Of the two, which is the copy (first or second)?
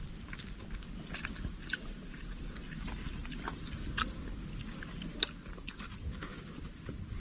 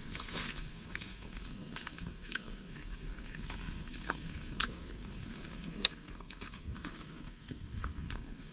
second